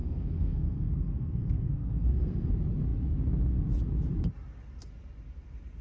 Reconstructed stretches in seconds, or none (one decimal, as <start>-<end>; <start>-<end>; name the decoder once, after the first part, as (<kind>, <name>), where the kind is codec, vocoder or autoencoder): 0.0-2.5 (codec, SNAC)